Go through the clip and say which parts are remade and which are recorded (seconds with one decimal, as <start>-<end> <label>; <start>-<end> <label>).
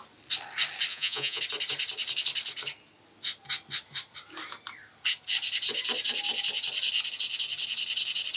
0.0-0.9 recorded; 0.9-1.4 remade; 1.4-8.4 recorded